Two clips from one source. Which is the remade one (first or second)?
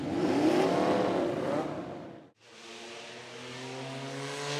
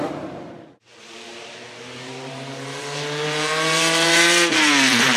second